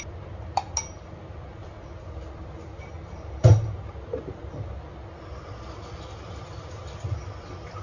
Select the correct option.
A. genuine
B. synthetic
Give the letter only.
A